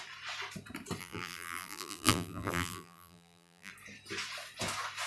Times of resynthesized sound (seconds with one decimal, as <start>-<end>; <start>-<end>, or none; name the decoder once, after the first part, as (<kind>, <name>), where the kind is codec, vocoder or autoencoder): 1.0-3.7 (vocoder, BigVGAN v2)